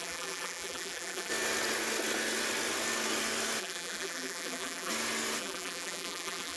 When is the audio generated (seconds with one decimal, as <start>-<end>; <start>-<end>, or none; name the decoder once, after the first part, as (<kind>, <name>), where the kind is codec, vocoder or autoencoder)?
0.0-1.3 (vocoder, BigVGAN v2); 3.6-4.9; 5.4-6.6